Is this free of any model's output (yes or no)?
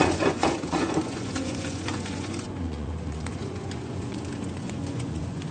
no